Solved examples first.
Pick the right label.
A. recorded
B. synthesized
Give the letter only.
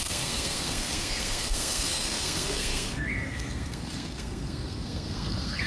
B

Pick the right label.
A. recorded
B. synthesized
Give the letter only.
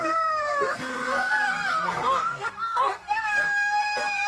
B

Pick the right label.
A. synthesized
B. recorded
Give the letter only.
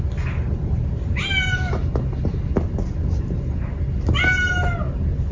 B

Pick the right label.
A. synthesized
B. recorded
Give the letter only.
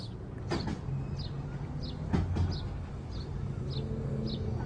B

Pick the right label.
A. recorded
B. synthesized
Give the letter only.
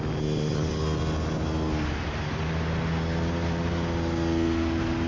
A